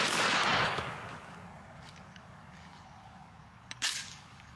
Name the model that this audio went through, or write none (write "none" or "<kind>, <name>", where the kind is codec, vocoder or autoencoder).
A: codec, DAC